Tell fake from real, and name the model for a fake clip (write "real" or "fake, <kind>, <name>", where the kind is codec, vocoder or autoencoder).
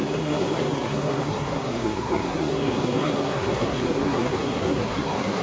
fake, codec, SNAC